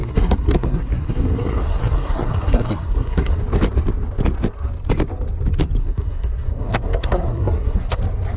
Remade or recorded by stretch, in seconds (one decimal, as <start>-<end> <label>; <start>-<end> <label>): 0.0-3.4 remade; 3.4-5.8 recorded; 5.8-8.0 remade; 8.0-8.4 recorded